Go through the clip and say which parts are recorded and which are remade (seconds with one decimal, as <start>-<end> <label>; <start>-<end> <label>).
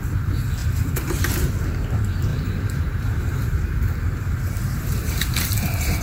0.0-0.6 recorded; 0.6-1.2 remade; 1.2-2.3 recorded; 2.3-6.0 remade